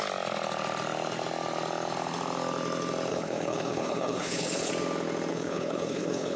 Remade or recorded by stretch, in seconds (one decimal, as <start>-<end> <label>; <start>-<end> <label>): 0.0-3.1 recorded; 3.1-4.7 remade; 4.7-5.3 recorded; 5.3-6.4 remade